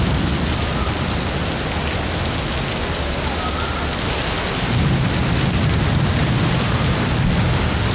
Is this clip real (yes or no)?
yes